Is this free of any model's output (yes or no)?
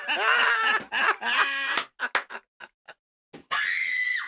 yes